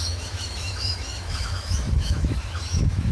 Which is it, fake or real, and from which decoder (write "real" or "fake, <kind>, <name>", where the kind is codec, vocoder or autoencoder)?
fake, autoencoder, DAC-VAE